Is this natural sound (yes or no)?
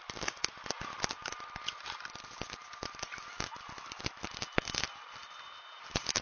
yes